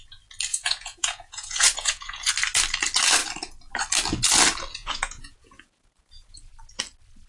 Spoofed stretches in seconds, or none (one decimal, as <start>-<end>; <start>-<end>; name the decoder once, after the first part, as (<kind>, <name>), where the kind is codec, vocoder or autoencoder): 0.5-2.3 (vocoder, Vocos); 4.8-6.5